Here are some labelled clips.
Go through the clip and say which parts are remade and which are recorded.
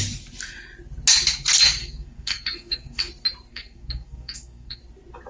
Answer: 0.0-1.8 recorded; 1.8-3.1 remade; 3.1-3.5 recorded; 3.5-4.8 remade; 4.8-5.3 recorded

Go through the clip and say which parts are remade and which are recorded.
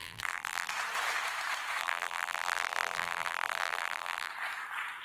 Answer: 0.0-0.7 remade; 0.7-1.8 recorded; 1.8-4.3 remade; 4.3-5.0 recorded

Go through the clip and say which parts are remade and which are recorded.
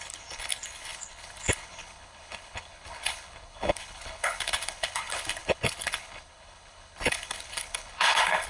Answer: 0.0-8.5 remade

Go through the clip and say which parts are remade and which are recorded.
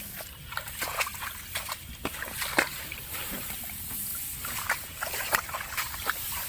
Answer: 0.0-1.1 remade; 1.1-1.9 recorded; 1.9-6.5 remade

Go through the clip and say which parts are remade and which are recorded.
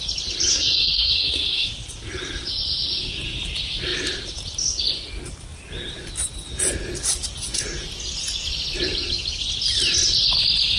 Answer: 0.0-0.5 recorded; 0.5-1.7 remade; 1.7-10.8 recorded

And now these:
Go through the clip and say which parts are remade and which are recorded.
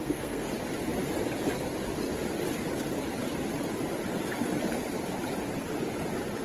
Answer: 0.0-0.5 remade; 0.5-6.4 recorded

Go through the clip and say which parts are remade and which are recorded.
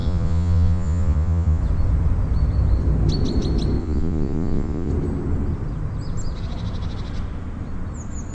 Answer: 0.0-1.6 remade; 1.6-3.8 recorded; 3.8-4.9 remade; 4.9-8.3 recorded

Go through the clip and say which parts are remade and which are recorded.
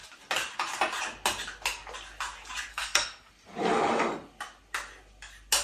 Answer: 0.0-2.7 recorded; 2.7-3.3 remade; 3.3-5.6 recorded